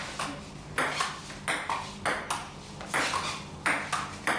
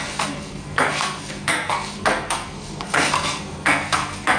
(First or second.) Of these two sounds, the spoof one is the second